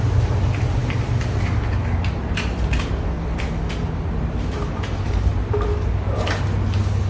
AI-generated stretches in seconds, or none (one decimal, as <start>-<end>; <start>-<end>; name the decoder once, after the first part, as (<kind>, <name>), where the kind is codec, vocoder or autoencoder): none